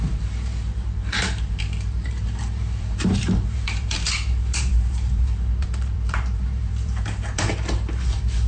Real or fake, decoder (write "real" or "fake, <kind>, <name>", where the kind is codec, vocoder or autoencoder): fake, vocoder, BigVGAN v2